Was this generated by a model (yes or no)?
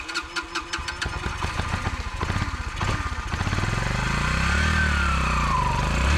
no